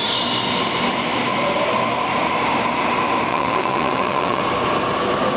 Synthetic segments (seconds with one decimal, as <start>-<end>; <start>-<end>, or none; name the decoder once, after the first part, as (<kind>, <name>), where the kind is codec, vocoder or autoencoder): 3.3-4.4 (vocoder, WaveNeXt)